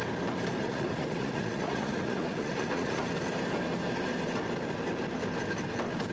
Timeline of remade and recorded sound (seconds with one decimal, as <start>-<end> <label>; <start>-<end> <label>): 0.0-0.6 recorded; 0.6-3.0 remade; 3.0-6.1 recorded